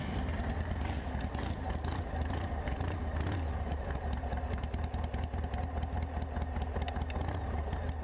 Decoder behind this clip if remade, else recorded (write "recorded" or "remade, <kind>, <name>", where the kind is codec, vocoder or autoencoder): recorded